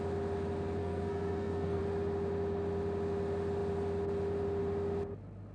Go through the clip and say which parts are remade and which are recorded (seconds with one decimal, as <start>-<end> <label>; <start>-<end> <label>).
0.0-0.8 recorded; 0.8-1.8 remade; 1.8-5.5 recorded